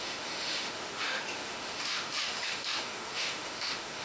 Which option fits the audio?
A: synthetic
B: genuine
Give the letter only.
A